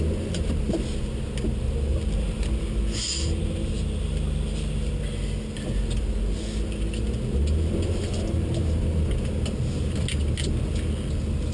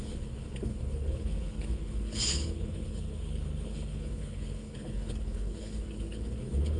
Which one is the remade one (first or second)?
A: second